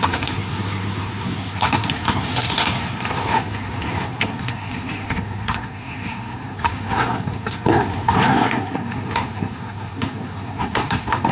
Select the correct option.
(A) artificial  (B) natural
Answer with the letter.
A